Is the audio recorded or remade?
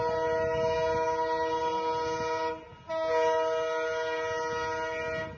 recorded